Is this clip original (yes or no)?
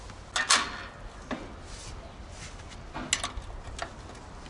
yes